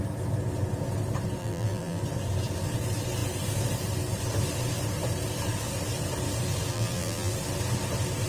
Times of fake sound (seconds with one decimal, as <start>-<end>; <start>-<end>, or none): 1.4-2.0; 6.7-7.3